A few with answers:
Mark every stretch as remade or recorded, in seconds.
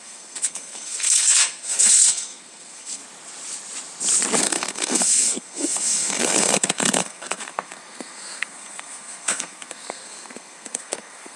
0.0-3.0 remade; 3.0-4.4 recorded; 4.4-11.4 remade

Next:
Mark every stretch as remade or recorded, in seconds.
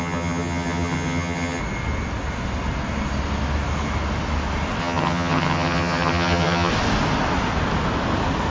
0.0-1.6 remade; 1.6-4.8 recorded; 4.8-6.7 remade; 6.7-8.5 recorded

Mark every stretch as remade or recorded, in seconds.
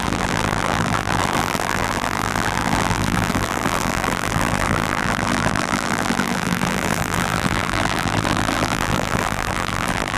0.0-10.2 remade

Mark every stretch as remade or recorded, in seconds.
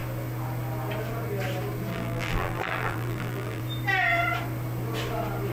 0.0-1.9 recorded; 1.9-3.6 remade; 3.6-5.5 recorded